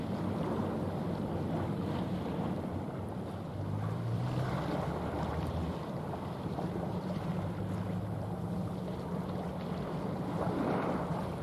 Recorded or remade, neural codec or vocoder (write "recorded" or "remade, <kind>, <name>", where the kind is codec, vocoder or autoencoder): remade, vocoder, BigVGAN v2